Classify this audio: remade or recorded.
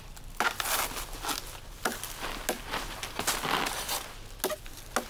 recorded